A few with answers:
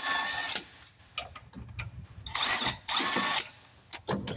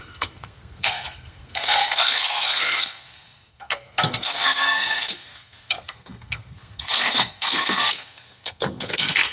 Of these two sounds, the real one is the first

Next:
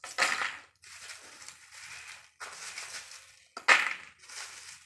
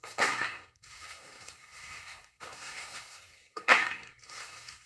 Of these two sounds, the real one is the first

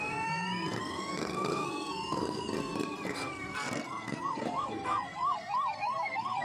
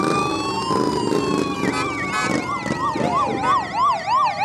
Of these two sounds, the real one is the second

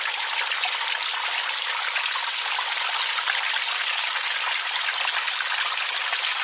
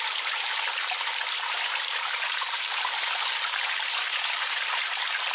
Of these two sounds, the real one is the first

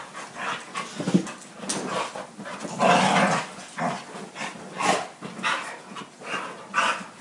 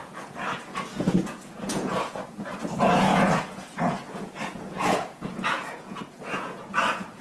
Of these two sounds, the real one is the first